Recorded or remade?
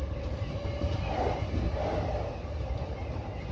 remade